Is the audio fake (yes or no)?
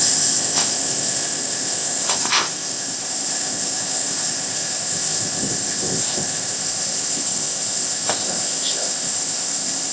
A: yes